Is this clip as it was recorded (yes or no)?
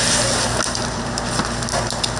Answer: yes